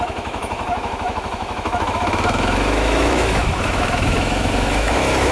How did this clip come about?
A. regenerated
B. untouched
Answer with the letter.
A